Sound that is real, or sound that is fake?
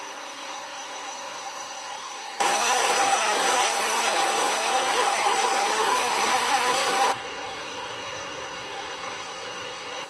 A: fake